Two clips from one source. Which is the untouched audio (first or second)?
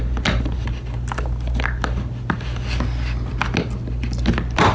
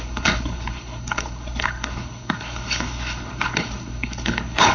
first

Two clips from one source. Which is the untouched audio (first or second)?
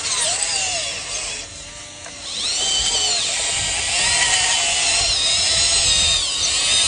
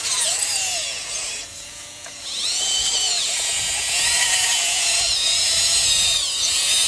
first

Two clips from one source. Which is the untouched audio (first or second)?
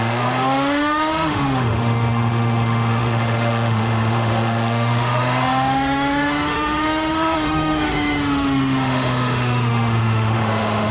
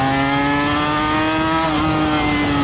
second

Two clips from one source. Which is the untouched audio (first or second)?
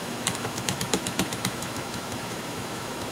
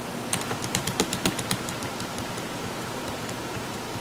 second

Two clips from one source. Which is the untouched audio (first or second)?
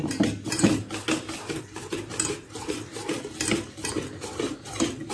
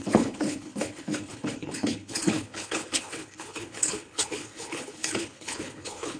first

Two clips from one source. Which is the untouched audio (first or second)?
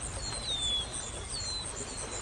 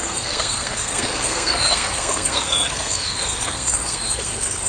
first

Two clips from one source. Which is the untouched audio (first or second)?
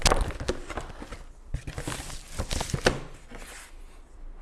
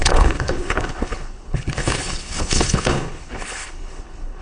first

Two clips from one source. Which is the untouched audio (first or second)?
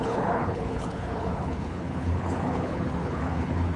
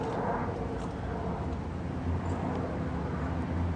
second